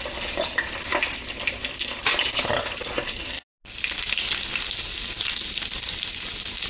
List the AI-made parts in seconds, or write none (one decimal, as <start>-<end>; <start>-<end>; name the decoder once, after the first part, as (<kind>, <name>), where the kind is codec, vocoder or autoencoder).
none